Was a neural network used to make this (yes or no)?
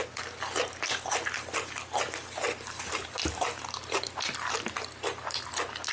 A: no